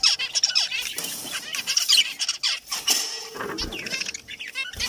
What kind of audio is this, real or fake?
real